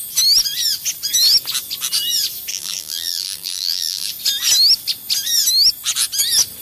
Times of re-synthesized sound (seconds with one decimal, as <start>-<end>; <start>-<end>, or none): 2.5-4.1